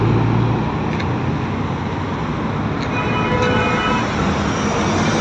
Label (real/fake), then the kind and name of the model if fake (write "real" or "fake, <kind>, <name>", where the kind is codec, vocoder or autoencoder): real